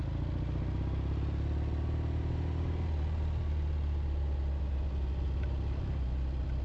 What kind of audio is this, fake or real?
real